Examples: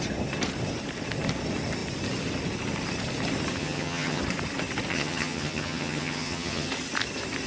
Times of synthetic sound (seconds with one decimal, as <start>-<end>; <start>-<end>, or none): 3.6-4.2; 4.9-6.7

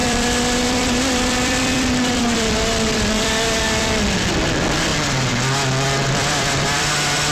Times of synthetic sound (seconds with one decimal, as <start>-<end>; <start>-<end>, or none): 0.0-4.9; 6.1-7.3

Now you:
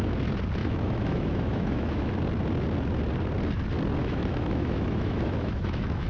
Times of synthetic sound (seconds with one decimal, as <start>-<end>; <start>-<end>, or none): 0.6-2.1; 4.0-6.1

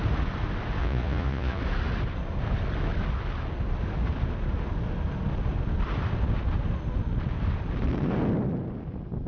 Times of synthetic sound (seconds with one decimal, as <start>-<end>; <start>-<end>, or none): 0.8-1.6

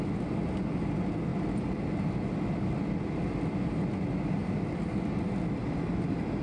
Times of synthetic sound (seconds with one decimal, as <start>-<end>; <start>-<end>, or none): 5.6-6.4

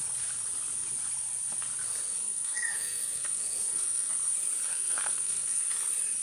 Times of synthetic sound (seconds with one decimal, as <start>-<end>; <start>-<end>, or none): 2.2-4.1; 4.7-5.6

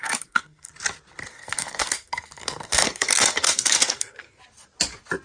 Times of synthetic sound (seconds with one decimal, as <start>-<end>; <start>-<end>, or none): 0.0-0.7; 1.3-4.4

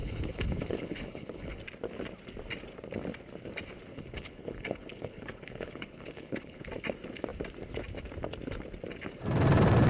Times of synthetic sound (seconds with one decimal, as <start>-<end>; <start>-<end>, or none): 0.0-1.6; 3.9-6.7